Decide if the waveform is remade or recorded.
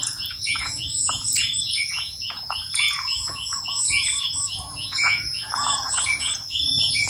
remade